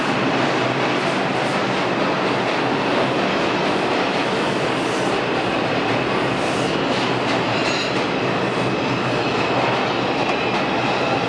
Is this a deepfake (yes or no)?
no